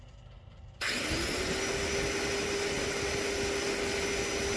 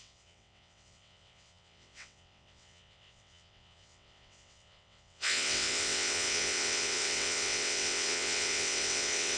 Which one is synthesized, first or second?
second